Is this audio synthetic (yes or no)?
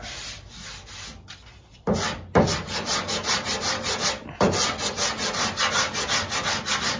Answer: no